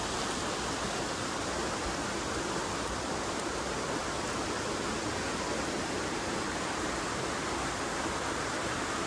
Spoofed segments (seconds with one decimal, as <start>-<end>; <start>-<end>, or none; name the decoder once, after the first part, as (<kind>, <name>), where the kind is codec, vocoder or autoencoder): none